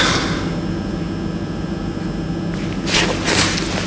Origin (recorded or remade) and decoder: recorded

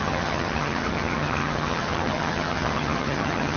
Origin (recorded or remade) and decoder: remade, vocoder, HiFi-GAN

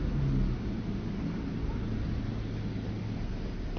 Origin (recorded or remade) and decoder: recorded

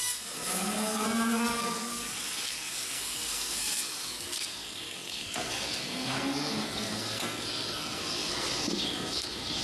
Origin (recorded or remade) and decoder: remade, codec, SNAC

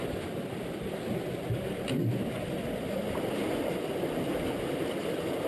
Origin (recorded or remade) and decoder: recorded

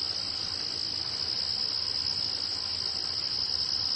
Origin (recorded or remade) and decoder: recorded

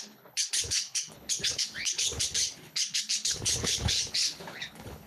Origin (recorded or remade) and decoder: remade, codec, HILCodec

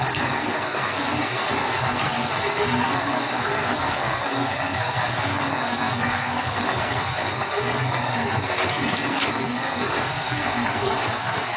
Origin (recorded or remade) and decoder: remade, codec, SNAC